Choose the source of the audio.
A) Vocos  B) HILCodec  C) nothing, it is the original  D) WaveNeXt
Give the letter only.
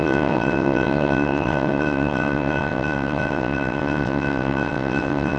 D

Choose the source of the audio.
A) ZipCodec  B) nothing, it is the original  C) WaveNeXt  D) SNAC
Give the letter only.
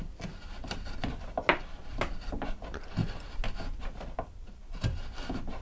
B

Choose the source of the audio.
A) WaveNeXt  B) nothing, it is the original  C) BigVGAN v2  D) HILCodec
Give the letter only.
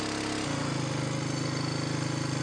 B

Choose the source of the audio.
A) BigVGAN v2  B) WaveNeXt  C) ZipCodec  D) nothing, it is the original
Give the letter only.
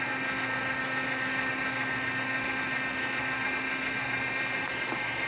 D